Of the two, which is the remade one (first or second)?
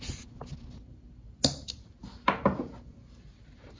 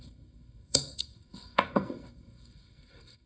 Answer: second